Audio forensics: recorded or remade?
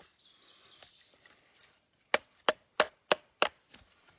recorded